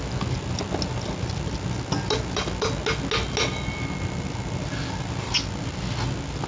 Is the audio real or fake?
real